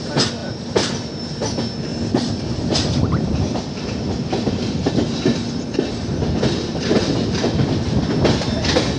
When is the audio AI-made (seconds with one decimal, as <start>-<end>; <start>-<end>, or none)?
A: 0.4-1.2; 1.9-4.9; 6.1-7.6